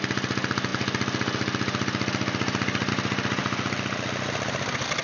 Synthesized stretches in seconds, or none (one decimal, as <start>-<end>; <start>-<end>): none